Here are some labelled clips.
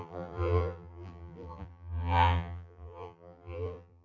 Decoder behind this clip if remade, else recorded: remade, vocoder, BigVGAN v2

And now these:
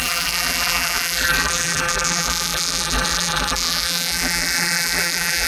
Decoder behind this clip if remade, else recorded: remade, vocoder, BigVGAN v2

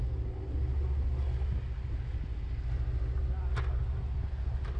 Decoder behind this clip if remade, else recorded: recorded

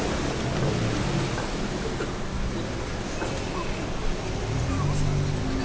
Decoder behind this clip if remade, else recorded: recorded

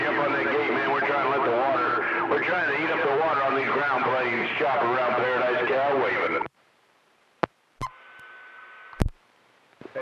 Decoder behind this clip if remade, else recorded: remade, vocoder, BigVGAN v2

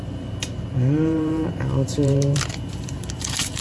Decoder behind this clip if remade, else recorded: remade, vocoder, BigVGAN v2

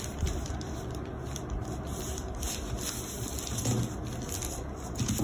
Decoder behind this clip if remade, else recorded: recorded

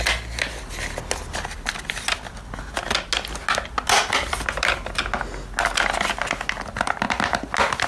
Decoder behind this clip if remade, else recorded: recorded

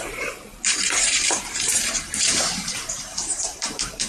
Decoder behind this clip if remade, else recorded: remade, vocoder, BigVGAN v2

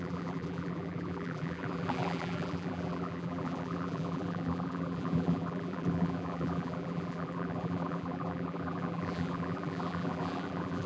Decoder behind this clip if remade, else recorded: remade, vocoder, BigVGAN v2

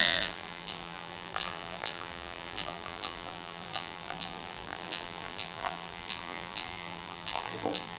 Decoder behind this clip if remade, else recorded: remade, vocoder, BigVGAN v2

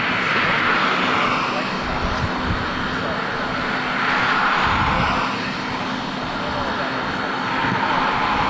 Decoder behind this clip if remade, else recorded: recorded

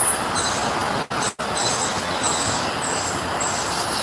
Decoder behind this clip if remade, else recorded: recorded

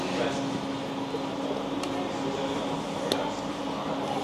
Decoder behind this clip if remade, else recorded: recorded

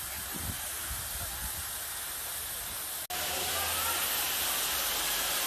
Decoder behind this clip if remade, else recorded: recorded